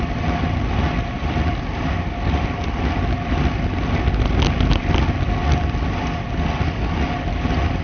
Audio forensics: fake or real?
real